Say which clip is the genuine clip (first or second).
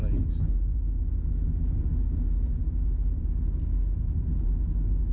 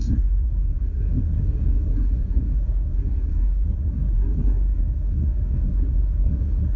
first